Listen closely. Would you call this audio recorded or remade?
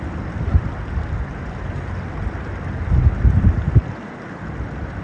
recorded